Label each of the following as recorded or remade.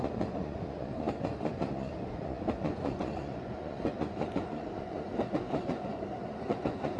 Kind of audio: remade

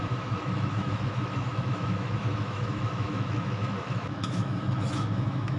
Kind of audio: remade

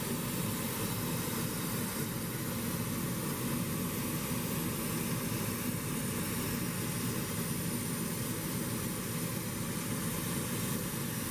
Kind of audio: recorded